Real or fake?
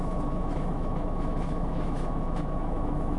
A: fake